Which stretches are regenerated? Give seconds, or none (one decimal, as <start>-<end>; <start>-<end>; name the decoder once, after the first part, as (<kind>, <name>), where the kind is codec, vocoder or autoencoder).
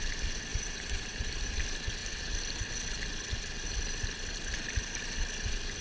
0.5-1.5 (vocoder, BigVGAN v2)